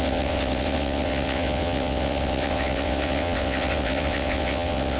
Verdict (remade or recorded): remade